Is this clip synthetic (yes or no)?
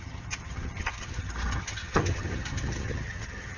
yes